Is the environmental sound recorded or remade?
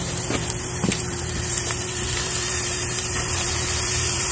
remade